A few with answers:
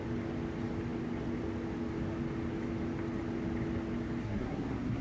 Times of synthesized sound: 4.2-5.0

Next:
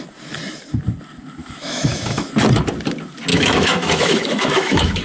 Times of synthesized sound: 1.4-2.3; 3.3-5.0